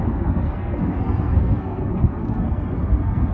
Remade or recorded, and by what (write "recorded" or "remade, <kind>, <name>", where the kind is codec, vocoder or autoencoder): remade, codec, SNAC